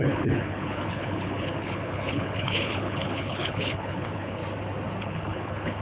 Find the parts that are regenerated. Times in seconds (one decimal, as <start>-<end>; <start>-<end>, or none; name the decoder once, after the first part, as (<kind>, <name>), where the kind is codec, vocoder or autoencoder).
0.0-4.4 (codec, HILCodec); 5.0-5.8